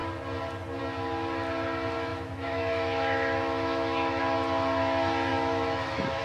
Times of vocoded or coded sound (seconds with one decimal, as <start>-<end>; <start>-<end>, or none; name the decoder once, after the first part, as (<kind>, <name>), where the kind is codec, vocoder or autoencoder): 2.1-4.2 (autoencoder, DAC-VAE); 5.3-6.2